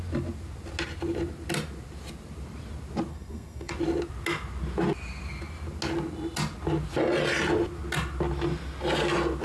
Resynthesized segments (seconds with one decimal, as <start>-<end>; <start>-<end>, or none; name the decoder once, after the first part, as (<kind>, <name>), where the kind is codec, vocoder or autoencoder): 3.1-3.7 (codec, SNAC)